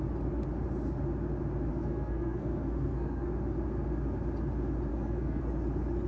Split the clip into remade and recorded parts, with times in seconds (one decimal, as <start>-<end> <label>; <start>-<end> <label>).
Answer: 0.0-1.7 recorded; 1.7-3.3 remade; 3.3-4.9 recorded; 4.9-5.4 remade; 5.4-6.1 recorded